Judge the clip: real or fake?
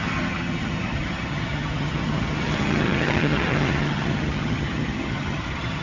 fake